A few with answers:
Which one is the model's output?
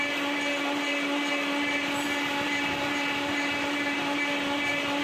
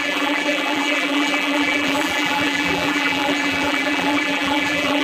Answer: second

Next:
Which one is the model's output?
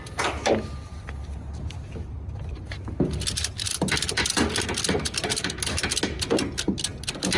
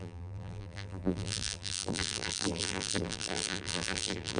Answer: second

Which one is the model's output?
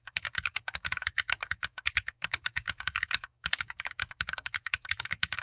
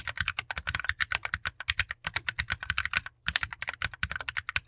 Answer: first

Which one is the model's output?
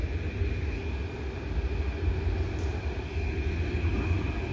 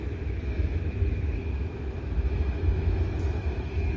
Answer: second